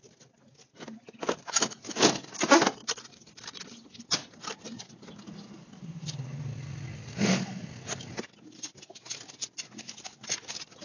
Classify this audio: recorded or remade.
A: recorded